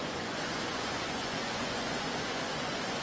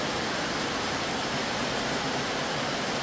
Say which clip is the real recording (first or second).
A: second